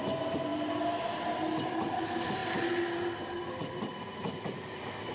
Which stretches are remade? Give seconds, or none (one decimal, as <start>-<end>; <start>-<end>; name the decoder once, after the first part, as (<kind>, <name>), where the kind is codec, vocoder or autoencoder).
none